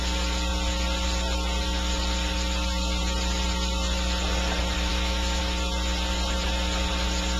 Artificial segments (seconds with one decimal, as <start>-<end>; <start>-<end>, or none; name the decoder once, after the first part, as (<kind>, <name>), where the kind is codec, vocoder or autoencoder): 4.9-5.4 (autoencoder, DAC-VAE)